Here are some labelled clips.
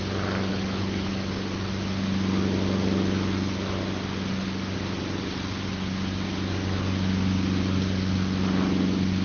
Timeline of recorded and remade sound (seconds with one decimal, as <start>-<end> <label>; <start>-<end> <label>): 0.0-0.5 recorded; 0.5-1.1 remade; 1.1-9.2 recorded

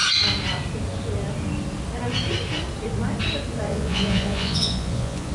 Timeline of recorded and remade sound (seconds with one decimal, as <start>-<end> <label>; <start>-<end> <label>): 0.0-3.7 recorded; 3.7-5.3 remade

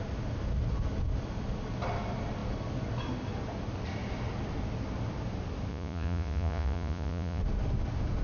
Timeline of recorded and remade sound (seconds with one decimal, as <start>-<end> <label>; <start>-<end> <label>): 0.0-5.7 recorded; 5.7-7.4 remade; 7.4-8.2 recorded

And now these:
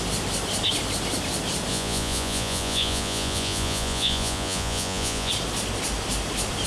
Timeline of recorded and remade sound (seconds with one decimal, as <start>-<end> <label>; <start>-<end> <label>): 0.0-1.7 recorded; 1.7-5.3 remade; 5.3-6.7 recorded